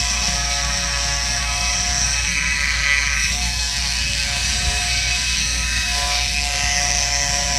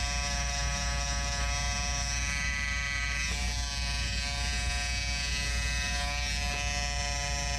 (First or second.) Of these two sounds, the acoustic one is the second